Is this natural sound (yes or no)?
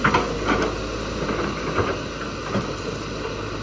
yes